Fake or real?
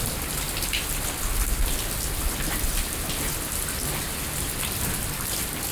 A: real